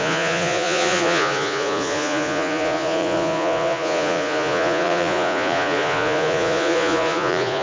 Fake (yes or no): yes